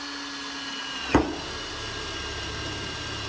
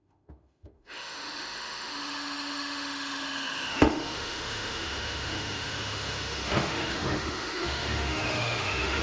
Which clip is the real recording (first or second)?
first